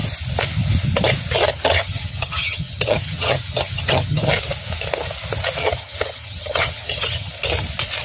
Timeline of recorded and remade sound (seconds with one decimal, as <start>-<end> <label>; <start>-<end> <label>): 0.0-1.5 recorded; 1.5-4.3 remade; 4.3-5.6 recorded; 5.6-7.3 remade; 7.3-8.0 recorded